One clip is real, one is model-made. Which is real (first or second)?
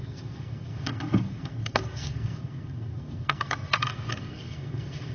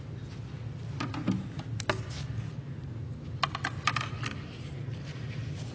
second